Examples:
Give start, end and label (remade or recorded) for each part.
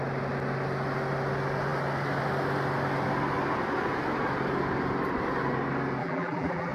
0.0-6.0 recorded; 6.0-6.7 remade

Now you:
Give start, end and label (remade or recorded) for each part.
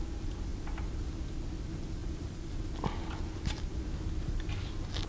0.0-2.0 recorded; 2.0-2.6 remade; 2.6-5.1 recorded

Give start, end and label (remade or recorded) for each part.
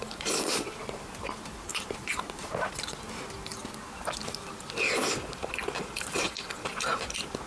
0.0-1.7 recorded; 1.7-2.7 remade; 2.7-7.5 recorded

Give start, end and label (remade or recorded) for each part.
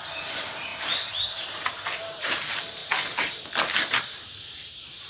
0.0-2.8 remade; 2.8-4.0 recorded; 4.0-5.1 remade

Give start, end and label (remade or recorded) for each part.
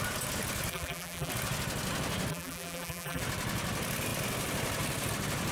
0.0-0.7 recorded; 0.7-1.3 remade; 1.3-2.3 recorded; 2.3-3.2 remade; 3.2-5.5 recorded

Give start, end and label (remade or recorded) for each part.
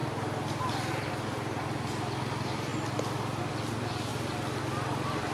0.0-5.3 recorded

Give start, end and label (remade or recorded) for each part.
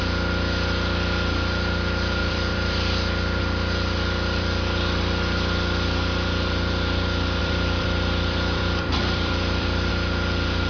0.0-2.2 recorded; 2.2-3.4 remade; 3.4-7.4 recorded; 7.4-9.9 remade; 9.9-10.7 recorded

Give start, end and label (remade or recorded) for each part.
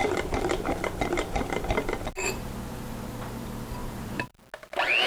0.0-0.7 remade; 0.7-3.8 recorded; 3.8-4.4 remade; 4.4-5.1 recorded